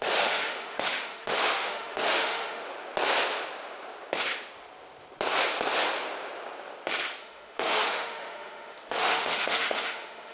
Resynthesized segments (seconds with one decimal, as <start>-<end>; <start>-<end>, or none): 0.0-2.6; 7.2-10.3